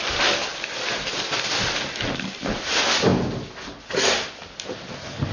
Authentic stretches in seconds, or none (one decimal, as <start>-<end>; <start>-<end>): 0.0-5.3